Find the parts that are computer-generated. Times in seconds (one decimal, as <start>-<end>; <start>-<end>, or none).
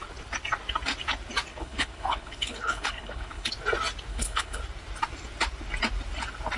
1.5-3.5; 4.1-4.6